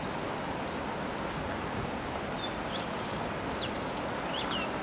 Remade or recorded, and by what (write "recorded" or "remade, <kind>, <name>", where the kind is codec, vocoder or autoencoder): recorded